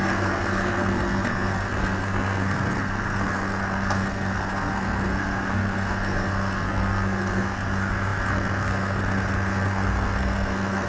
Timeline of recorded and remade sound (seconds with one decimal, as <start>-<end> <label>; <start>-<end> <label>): 0.0-10.9 remade